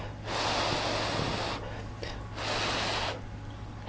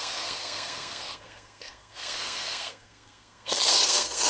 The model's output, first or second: second